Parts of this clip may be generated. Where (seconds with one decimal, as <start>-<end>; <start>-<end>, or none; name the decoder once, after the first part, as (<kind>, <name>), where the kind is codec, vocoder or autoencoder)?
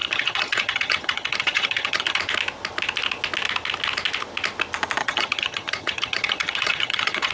0.0-2.2 (vocoder, HiFi-GAN); 5.0-7.3